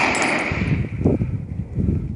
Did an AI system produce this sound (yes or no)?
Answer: no